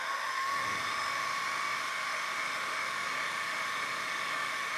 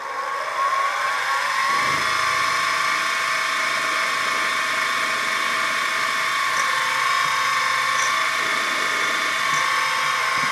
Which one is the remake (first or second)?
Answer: first